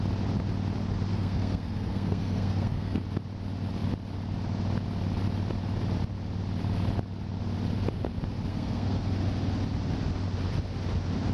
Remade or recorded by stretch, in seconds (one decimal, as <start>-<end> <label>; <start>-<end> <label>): 0.0-1.1 recorded; 1.1-3.0 remade; 3.0-8.5 recorded; 8.5-9.1 remade; 9.1-11.3 recorded